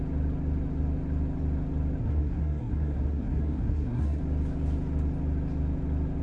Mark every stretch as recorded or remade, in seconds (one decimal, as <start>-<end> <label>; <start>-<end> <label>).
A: 0.0-2.0 recorded; 2.0-4.2 remade; 4.2-6.2 recorded